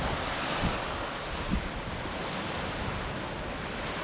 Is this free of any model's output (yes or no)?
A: yes